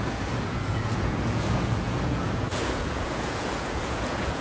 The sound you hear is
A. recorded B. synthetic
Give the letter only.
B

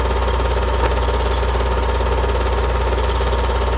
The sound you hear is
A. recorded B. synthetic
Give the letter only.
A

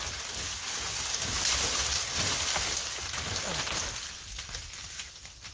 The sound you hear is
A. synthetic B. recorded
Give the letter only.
B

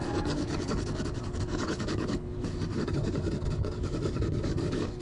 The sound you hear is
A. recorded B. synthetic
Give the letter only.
B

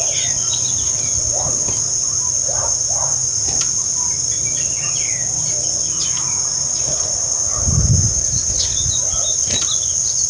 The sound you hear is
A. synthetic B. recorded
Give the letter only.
B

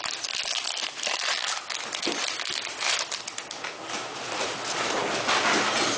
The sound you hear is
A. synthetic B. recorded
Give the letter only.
B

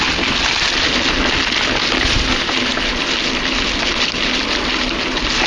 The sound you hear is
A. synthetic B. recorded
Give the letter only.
B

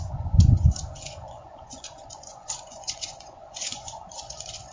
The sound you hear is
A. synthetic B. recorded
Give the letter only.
A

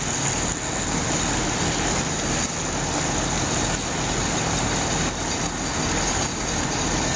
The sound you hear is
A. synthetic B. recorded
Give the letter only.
B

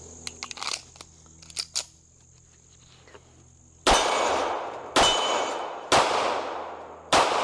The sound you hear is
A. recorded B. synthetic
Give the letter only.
A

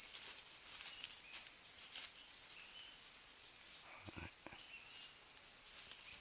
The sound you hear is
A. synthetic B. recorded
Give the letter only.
B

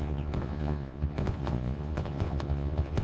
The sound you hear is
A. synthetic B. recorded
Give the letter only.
A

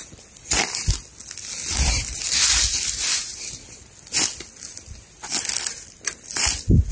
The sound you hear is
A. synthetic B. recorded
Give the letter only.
B